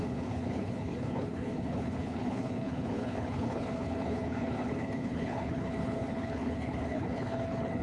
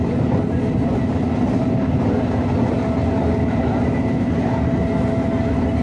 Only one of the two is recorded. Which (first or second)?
second